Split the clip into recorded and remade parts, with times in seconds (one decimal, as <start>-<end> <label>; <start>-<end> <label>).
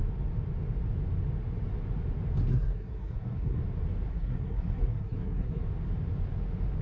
0.0-2.5 recorded; 2.5-3.6 remade; 3.6-4.1 recorded; 4.1-5.6 remade; 5.6-6.8 recorded